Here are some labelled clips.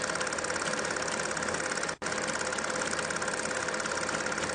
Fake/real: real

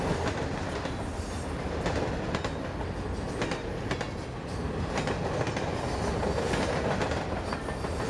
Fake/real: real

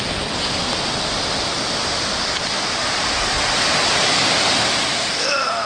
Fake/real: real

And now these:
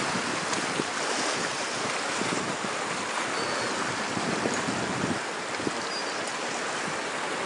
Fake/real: real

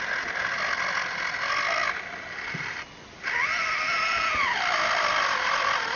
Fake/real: real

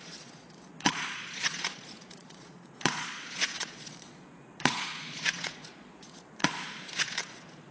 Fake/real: fake